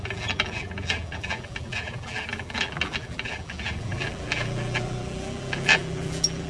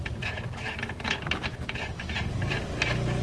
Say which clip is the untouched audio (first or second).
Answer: second